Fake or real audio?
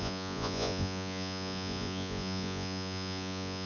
fake